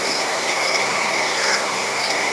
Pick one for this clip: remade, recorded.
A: remade